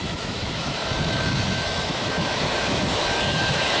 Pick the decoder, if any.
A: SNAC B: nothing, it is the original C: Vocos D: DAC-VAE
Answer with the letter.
D